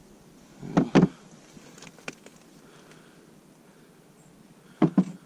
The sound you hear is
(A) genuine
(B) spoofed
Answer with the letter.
A